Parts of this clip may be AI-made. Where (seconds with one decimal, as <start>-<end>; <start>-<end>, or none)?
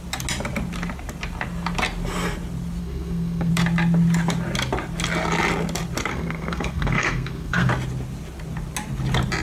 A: 2.8-3.5; 6.1-7.7